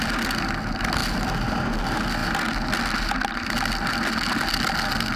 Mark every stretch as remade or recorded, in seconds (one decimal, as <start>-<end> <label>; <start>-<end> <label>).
0.0-1.0 recorded; 1.0-1.8 remade; 1.8-5.2 recorded